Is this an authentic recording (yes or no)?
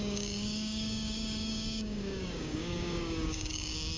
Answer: no